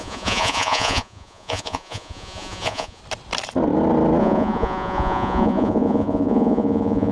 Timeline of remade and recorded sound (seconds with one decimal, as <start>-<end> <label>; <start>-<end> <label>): 0.0-3.0 remade; 3.0-4.2 recorded; 4.2-7.1 remade